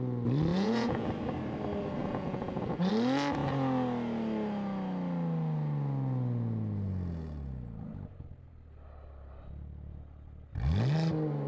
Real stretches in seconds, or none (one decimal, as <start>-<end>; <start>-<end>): 0.0-0.5; 1.1-2.0; 2.9-11.5